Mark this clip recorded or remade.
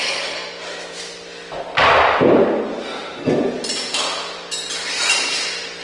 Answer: recorded